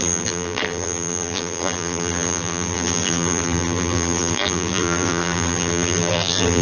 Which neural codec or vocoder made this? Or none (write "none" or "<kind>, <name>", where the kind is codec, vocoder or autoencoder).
vocoder, BigVGAN v2